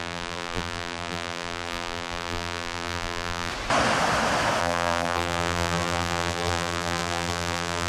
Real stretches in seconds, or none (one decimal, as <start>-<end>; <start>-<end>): 3.5-4.6